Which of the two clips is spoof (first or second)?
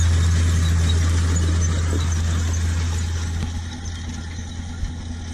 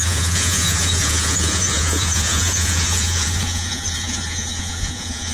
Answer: second